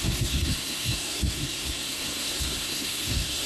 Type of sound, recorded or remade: remade